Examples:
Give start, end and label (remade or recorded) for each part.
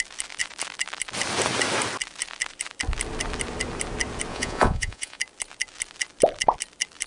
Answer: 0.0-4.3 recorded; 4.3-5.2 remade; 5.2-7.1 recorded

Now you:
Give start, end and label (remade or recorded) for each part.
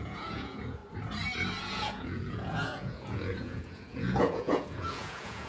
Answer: 0.0-0.8 remade; 0.8-1.6 recorded; 1.6-5.5 remade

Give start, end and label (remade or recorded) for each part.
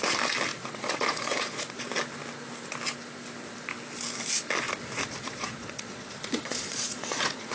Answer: 0.0-0.5 recorded; 0.5-1.9 remade; 1.9-5.0 recorded; 5.0-7.5 remade